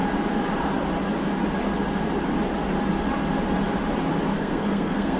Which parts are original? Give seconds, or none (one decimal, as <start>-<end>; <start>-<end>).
0.0-4.3